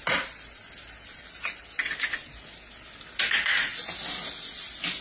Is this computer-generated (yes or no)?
no